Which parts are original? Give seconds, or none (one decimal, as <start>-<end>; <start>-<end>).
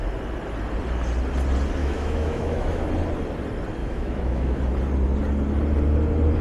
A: 0.0-1.8; 2.9-3.8; 4.6-6.4